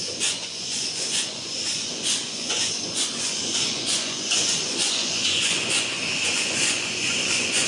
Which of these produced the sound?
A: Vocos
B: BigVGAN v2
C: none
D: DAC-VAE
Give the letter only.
A